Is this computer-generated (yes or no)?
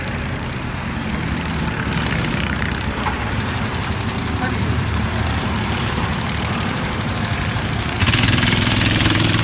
yes